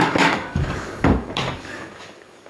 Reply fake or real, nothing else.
fake